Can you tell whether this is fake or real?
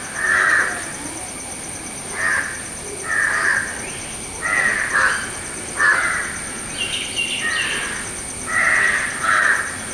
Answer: real